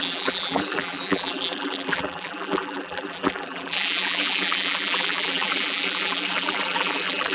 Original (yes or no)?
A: no